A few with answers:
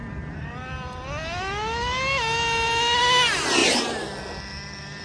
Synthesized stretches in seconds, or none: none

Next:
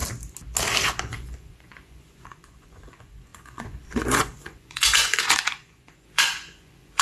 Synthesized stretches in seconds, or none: 1.0-7.0

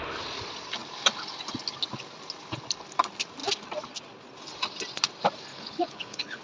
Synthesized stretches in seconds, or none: 5.5-6.4

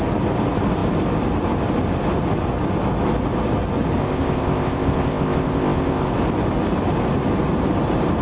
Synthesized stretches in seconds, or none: 4.0-6.1

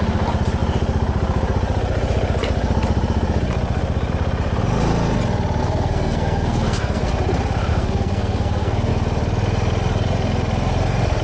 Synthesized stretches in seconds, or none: 5.6-7.1; 7.7-8.9

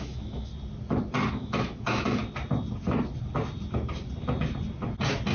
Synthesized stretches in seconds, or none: 0.0-0.5; 1.3-2.2

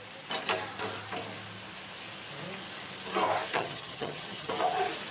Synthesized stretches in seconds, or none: 3.5-4.5